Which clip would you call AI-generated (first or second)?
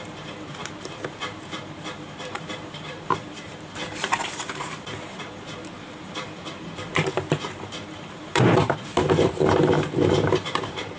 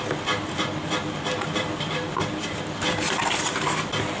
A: first